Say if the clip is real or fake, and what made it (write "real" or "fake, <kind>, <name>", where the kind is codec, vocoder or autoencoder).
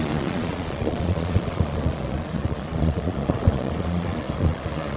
fake, vocoder, Vocos